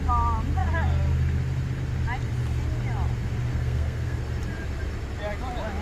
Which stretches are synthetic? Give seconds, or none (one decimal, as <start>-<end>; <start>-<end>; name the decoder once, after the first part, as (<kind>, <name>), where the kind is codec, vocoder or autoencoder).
3.5-4.2 (codec, SNAC)